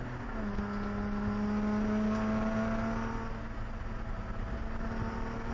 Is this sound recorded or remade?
recorded